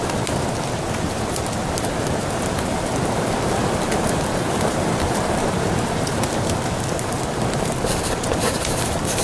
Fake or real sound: fake